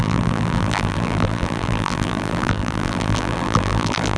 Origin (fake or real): fake